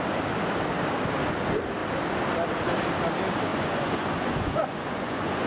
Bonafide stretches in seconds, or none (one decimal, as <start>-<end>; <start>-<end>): 0.0-3.5